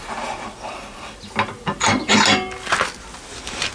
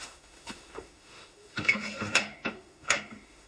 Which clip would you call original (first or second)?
first